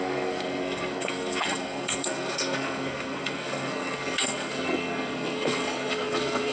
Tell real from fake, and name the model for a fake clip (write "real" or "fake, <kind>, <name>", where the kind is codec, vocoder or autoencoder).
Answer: fake, codec, SNAC